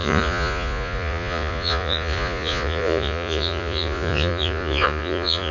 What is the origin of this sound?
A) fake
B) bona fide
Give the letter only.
A